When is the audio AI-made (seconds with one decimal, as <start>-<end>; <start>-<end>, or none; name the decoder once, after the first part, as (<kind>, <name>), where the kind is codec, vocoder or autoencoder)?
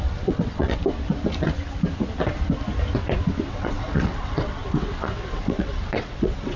0.0-0.8 (vocoder, WaveNeXt); 3.5-6.6